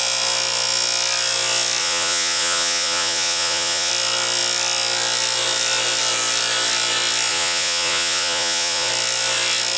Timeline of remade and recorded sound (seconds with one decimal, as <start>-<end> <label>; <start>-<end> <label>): 0.0-1.8 recorded; 1.8-3.9 remade; 3.9-7.3 recorded; 7.3-8.9 remade; 8.9-9.8 recorded